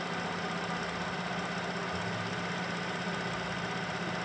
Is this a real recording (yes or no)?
yes